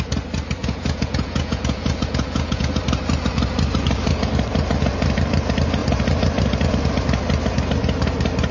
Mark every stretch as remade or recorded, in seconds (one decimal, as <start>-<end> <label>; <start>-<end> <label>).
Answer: 0.0-0.6 recorded; 0.6-2.7 remade; 2.7-8.5 recorded